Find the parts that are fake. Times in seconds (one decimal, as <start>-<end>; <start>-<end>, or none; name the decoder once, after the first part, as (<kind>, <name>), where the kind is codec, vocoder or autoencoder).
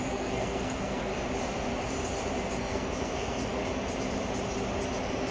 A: 0.0-1.1 (codec, SNAC); 2.6-3.6